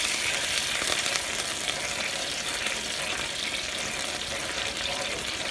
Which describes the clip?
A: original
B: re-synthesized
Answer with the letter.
A